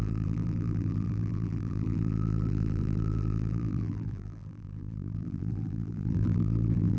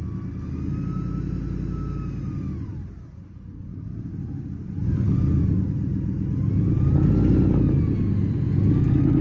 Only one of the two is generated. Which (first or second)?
first